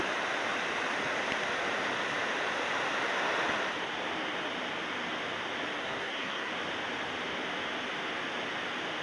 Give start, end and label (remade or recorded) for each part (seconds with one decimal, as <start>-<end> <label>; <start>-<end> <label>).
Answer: 0.0-5.8 recorded; 5.8-6.5 remade; 6.5-9.0 recorded